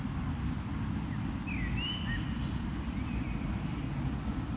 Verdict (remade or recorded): recorded